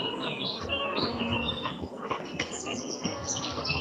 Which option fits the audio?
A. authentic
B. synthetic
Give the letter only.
B